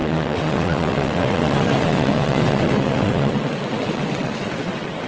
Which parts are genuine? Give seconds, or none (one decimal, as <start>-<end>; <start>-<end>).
none